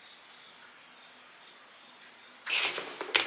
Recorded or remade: recorded